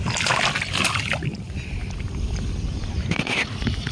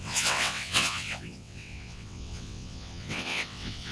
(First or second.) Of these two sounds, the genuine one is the first